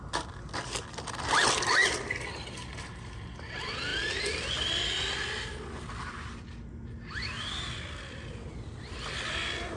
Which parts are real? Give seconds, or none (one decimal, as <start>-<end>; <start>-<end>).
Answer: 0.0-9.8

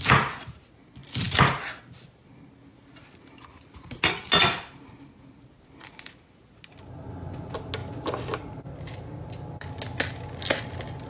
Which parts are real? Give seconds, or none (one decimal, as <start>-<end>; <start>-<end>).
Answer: 0.0-11.1

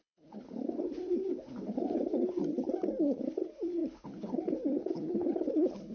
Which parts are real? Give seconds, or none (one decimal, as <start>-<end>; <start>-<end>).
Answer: 2.4-3.2